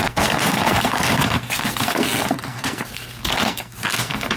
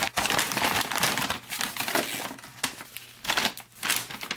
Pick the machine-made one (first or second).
first